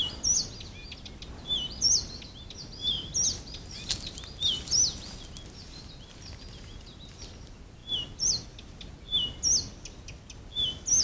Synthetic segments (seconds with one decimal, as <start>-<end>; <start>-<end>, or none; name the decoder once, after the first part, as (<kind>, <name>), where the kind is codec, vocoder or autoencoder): none